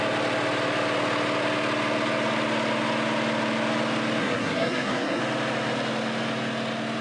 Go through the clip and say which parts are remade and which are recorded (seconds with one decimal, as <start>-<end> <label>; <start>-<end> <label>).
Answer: 0.0-4.2 recorded; 4.2-5.2 remade; 5.2-7.0 recorded